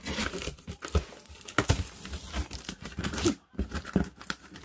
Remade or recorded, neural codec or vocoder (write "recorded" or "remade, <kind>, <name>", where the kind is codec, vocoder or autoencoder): recorded